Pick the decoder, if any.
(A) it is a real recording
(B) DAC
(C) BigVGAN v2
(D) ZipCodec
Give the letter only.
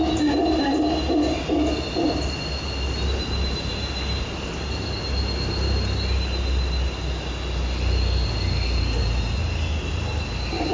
A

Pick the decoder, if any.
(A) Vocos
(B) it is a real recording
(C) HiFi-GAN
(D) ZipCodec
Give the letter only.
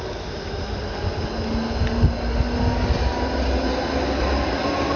B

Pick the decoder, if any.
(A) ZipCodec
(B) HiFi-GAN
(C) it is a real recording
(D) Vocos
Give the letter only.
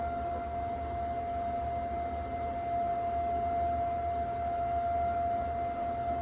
C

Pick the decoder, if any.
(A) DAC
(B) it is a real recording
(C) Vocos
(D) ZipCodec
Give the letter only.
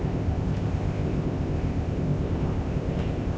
D